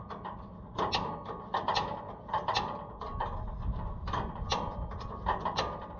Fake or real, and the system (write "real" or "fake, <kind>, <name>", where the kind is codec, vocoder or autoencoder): real